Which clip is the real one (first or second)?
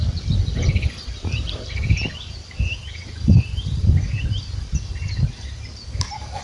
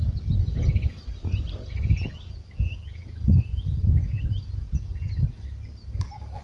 second